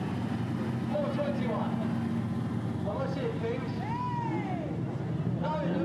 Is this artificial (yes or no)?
no